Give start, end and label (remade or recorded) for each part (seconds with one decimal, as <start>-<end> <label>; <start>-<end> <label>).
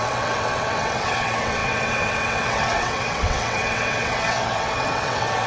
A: 0.0-5.5 remade